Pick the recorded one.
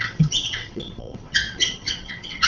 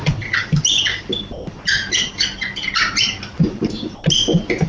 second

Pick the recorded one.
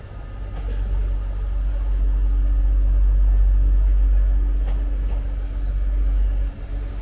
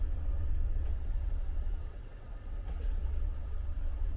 first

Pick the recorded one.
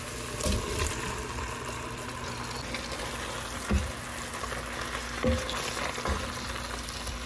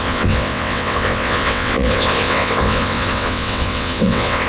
first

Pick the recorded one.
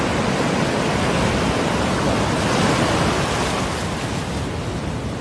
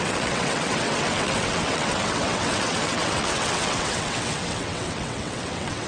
first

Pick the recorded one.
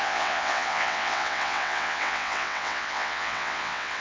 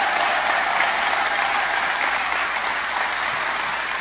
second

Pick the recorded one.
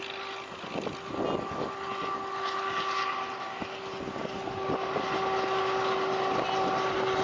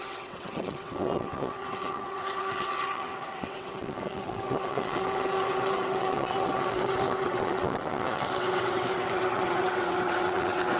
first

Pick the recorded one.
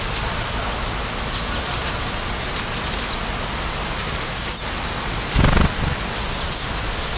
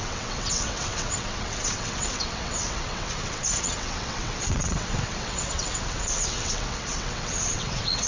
first